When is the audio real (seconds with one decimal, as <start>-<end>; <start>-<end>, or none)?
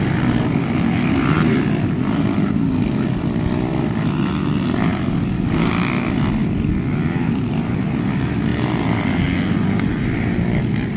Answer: 0.0-4.9; 5.7-11.0